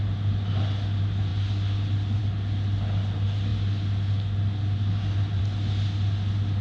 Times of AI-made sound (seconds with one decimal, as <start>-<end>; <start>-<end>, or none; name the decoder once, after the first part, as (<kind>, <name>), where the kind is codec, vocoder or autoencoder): none